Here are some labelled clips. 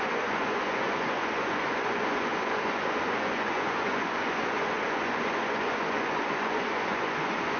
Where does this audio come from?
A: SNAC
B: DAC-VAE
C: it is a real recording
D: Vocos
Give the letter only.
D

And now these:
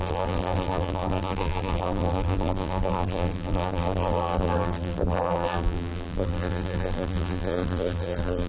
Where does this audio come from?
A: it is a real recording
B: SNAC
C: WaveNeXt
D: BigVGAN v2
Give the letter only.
D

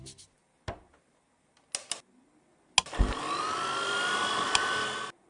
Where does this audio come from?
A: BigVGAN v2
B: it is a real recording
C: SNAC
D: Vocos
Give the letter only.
B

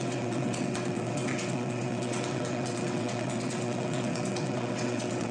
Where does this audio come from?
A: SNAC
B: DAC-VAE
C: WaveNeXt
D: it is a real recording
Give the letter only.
C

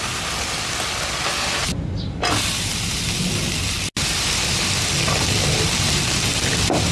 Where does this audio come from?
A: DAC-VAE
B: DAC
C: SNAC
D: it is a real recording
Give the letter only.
D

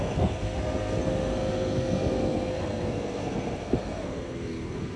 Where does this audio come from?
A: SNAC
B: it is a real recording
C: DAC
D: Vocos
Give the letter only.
A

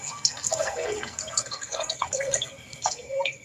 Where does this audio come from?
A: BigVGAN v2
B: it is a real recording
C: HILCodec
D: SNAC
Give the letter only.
D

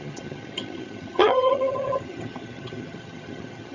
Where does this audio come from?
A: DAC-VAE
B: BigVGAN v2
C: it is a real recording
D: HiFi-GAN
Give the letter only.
D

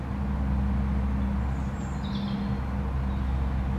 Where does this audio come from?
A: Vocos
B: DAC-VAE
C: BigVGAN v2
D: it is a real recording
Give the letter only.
D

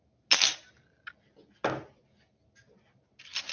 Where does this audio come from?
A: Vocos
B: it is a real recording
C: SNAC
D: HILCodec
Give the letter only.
B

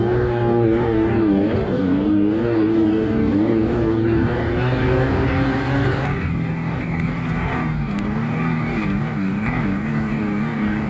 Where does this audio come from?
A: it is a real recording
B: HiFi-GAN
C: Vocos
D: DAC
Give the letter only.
D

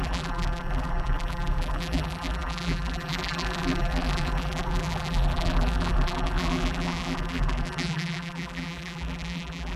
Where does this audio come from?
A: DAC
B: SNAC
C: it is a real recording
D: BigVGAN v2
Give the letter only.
D